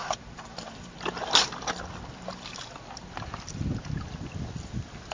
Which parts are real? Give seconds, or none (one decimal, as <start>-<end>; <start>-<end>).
0.0-5.1